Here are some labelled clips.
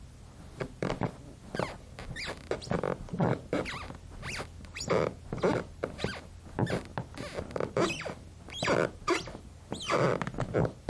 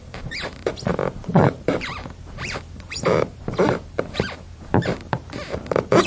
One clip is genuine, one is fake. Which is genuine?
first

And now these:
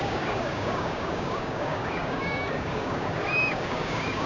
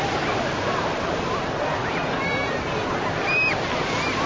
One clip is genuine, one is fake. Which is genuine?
second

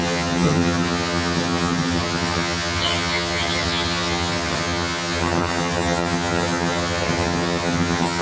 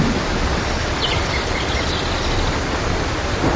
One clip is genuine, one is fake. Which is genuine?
second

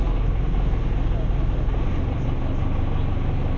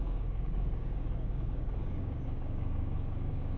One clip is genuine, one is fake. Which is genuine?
first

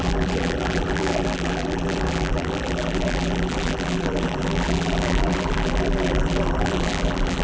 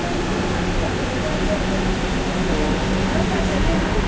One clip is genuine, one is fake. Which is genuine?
second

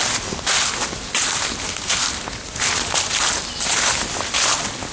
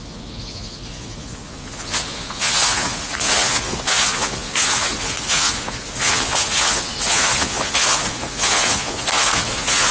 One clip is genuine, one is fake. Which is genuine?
first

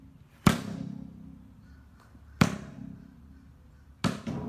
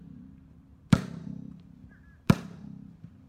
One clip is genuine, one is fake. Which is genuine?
first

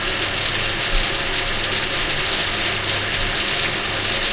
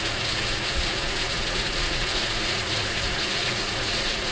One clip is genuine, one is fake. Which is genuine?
first